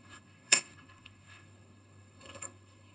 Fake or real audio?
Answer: fake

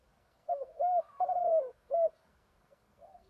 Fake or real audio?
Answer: fake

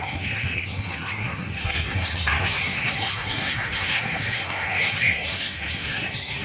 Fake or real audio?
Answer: fake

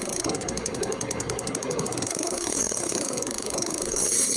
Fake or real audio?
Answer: fake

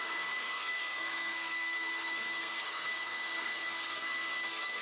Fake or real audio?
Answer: fake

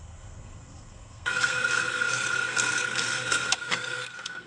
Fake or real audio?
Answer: fake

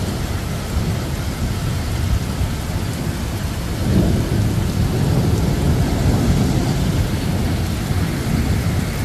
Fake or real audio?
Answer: real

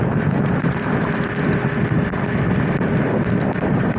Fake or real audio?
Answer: real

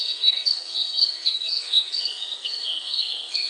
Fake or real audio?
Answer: fake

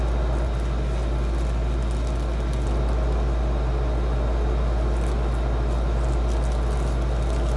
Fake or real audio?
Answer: real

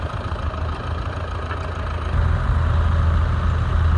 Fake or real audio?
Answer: real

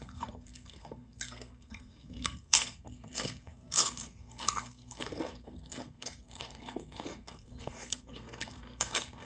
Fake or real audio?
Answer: fake